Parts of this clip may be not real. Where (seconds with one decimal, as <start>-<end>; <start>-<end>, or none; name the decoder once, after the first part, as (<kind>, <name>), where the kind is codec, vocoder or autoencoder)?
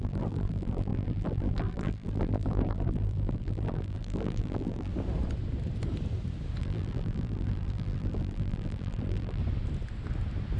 0.0-4.9 (vocoder, BigVGAN v2); 6.6-9.4